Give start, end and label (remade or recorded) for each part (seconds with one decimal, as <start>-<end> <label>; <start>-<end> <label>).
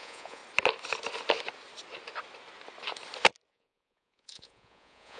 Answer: 0.0-0.4 remade; 0.4-3.5 recorded; 3.5-5.2 remade